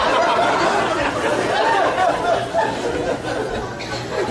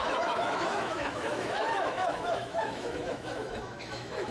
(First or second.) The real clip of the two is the first